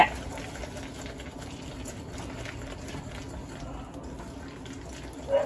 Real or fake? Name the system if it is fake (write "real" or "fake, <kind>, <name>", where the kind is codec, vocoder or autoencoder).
real